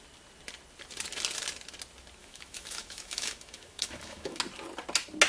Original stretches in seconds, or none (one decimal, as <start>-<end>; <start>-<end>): 0.0-2.2; 4.4-5.3